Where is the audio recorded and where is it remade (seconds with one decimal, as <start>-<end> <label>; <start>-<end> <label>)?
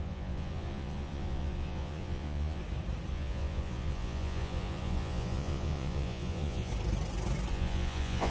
0.0-2.6 remade; 2.6-3.1 recorded; 3.1-6.7 remade; 6.7-7.5 recorded; 7.5-8.3 remade